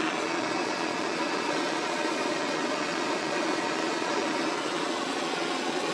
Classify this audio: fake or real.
fake